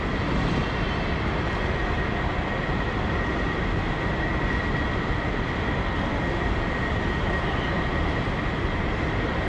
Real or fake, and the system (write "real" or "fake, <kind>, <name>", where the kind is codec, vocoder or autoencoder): real